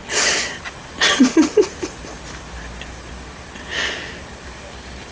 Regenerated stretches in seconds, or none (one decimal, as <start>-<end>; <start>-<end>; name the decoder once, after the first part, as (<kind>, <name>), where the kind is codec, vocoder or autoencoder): none